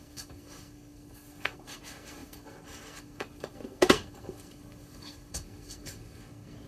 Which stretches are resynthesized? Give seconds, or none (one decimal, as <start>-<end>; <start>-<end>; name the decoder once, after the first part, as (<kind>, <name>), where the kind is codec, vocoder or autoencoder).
0.0-6.7 (codec, SNAC)